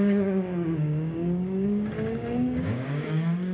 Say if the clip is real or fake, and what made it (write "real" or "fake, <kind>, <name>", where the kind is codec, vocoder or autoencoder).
fake, codec, DAC